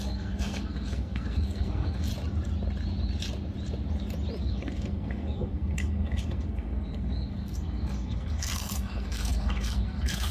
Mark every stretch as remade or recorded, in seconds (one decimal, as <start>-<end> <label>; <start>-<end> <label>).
0.0-2.1 remade; 2.1-4.4 recorded; 4.4-10.3 remade